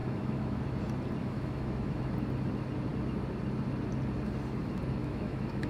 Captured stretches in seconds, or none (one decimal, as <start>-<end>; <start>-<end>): 0.6-1.2; 2.0-5.0